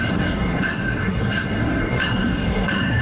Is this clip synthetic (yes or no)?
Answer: yes